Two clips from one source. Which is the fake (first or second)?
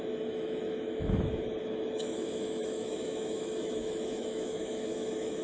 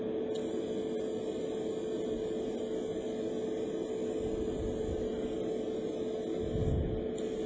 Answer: first